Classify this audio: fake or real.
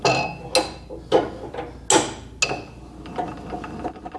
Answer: real